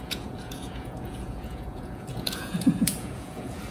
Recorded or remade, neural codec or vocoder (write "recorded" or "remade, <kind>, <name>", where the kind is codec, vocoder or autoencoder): remade, vocoder, Vocos